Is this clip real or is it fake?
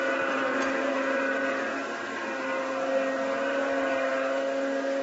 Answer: real